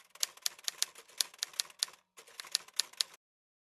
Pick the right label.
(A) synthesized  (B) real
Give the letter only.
B